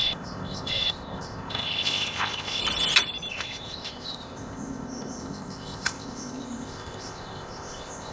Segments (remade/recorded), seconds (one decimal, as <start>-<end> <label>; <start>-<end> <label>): 0.0-2.6 remade; 2.6-3.3 recorded; 3.3-8.1 remade